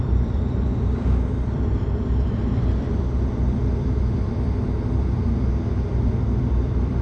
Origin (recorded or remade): remade